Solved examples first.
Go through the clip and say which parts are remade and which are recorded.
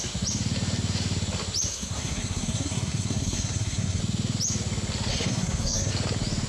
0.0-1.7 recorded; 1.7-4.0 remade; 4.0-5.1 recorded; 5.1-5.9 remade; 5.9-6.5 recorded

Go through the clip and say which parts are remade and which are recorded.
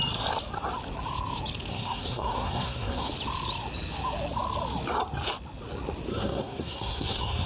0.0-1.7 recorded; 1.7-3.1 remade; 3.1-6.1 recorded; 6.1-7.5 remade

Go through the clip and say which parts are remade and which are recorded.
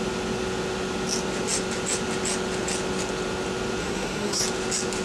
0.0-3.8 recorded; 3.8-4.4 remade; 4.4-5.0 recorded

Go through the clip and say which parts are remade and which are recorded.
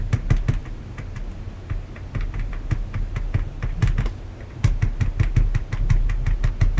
0.0-6.8 recorded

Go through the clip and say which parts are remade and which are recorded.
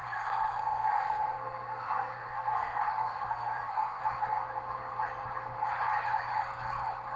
0.0-4.0 remade; 4.0-7.2 recorded